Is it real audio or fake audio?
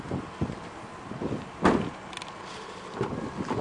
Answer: real